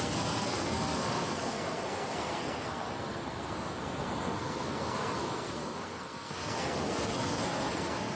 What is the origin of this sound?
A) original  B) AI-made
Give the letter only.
B